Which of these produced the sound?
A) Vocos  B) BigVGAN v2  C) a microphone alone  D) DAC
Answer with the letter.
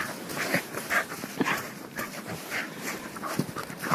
B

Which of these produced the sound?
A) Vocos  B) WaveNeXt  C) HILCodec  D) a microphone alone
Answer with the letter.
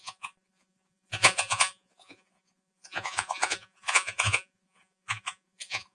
A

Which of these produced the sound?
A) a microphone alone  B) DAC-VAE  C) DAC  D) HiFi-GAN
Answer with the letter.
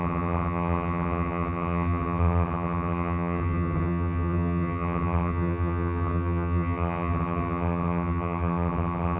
D